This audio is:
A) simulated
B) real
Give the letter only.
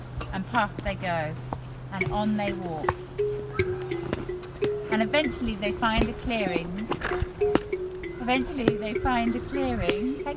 B